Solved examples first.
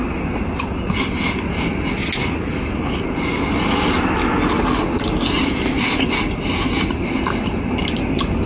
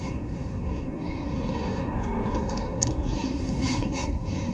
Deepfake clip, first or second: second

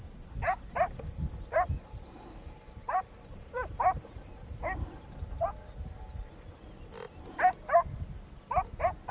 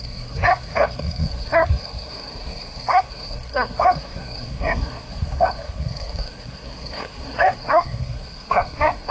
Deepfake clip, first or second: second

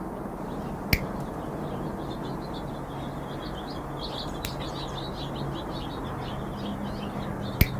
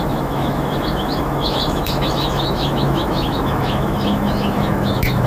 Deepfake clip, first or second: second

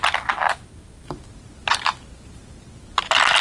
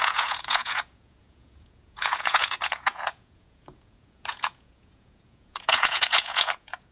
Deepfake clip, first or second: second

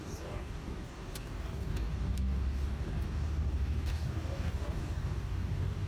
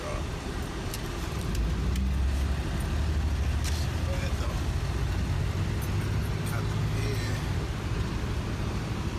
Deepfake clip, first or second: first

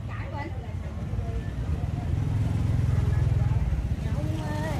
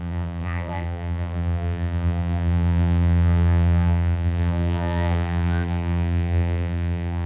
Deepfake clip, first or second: second